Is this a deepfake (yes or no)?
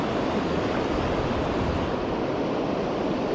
no